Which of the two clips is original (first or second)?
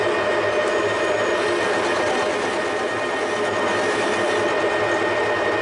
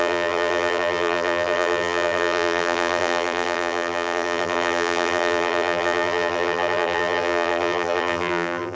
first